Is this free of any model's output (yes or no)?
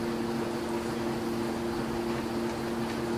yes